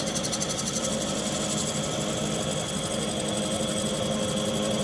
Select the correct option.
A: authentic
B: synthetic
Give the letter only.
A